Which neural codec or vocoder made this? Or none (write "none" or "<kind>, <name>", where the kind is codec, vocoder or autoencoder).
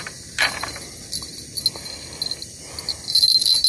none